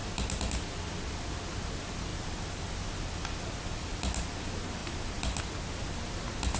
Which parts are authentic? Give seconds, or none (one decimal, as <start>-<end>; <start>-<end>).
0.0-2.1; 2.6-4.8; 5.4-6.6